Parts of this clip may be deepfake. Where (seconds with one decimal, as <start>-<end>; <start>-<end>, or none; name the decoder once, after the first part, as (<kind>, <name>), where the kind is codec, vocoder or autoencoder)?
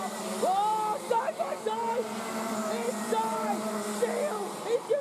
none